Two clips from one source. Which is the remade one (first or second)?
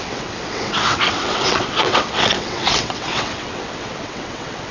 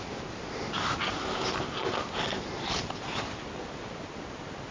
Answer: first